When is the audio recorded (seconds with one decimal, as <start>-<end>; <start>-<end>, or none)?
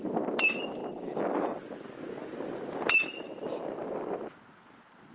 0.0-2.2; 4.3-5.1